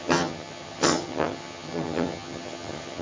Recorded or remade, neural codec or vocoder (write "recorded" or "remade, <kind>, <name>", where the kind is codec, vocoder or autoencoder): remade, vocoder, HiFi-GAN